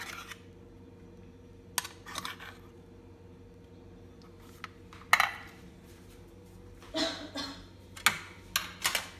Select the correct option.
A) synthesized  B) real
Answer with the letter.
B